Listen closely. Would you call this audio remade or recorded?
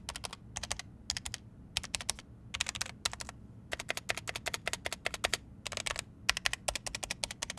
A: recorded